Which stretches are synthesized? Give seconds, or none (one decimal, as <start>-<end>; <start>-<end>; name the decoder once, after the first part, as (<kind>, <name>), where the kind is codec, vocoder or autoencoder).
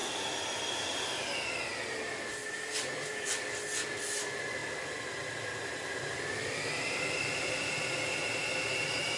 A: 2.4-3.4 (vocoder, BigVGAN v2); 4.6-8.2